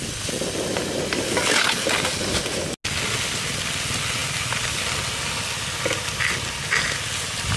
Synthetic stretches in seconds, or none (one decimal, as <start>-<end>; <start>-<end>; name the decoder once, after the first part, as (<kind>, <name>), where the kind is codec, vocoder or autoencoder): none